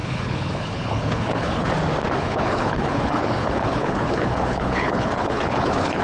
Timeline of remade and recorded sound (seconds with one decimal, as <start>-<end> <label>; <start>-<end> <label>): 0.0-1.7 remade; 1.7-2.2 recorded; 2.2-6.0 remade